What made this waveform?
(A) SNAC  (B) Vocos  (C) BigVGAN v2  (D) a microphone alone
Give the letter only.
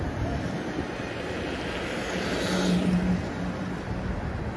D